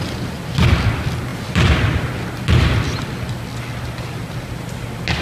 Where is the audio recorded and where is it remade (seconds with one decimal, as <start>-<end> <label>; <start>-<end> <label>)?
0.0-5.2 recorded